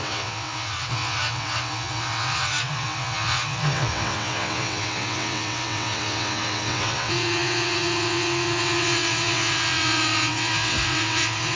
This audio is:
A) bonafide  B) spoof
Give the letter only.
B